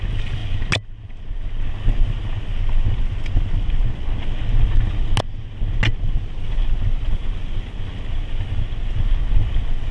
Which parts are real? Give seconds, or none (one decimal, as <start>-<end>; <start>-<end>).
0.0-9.9